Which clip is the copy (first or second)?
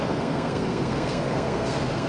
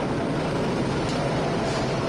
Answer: first